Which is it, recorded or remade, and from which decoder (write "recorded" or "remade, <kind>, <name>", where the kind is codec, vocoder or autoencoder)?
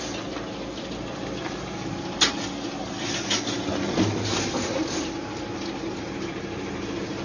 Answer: recorded